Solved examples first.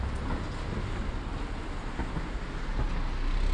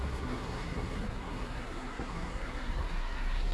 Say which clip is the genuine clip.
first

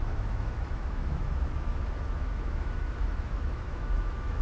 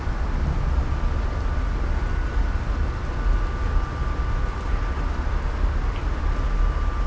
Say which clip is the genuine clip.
second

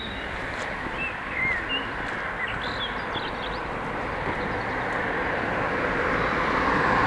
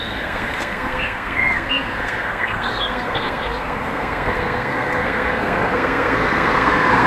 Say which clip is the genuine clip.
first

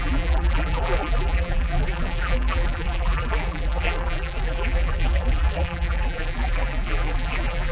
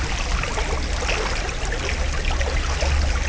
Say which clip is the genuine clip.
second